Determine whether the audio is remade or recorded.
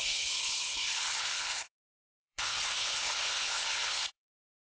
remade